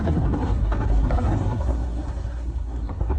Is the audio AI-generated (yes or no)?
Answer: yes